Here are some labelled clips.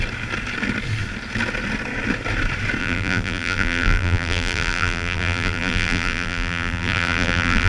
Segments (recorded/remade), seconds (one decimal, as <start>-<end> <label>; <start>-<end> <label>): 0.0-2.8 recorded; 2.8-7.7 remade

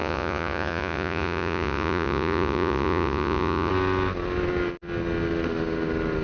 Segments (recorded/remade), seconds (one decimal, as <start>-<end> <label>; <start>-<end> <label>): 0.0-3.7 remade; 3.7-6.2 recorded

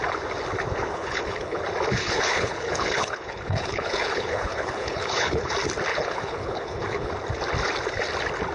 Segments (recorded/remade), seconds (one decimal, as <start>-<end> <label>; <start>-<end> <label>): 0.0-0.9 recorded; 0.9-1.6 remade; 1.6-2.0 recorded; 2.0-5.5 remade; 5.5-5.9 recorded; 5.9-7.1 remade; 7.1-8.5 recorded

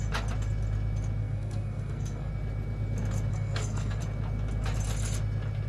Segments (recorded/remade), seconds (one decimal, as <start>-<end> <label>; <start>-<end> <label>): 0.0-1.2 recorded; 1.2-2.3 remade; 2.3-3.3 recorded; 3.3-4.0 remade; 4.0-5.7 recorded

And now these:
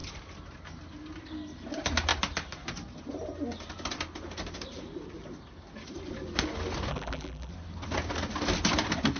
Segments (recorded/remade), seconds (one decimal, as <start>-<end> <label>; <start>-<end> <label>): 0.0-6.9 recorded; 6.9-7.5 remade; 7.5-9.2 recorded